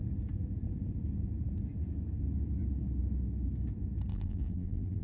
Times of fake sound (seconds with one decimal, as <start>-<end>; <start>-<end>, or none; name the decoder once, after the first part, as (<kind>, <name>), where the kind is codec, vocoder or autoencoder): 4.1-5.0 (vocoder, BigVGAN v2)